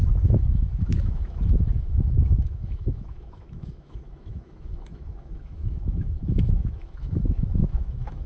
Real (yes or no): no